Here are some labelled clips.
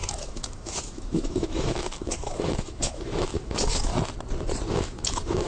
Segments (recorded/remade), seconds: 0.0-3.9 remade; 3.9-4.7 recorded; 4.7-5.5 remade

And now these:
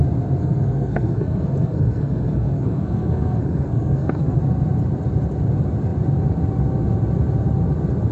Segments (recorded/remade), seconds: 0.0-0.4 recorded; 0.4-4.4 remade; 4.4-8.1 recorded

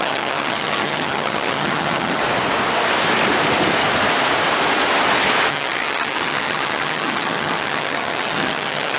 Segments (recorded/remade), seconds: 0.0-2.2 remade; 2.2-5.5 recorded; 5.5-9.0 remade

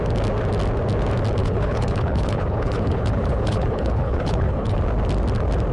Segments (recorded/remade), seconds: 0.0-1.4 recorded; 1.4-4.8 remade; 4.8-5.7 recorded

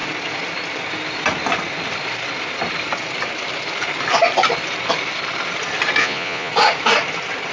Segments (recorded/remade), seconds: 0.0-6.0 recorded; 6.0-6.5 remade; 6.5-7.5 recorded

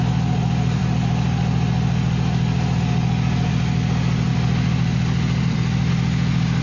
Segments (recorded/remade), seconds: 0.0-4.3 recorded; 4.3-5.9 remade; 5.9-6.6 recorded

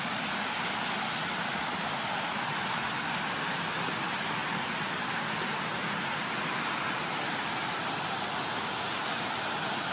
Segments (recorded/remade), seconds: 0.0-9.9 recorded